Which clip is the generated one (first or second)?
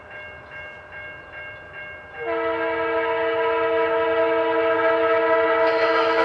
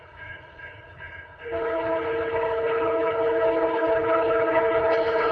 second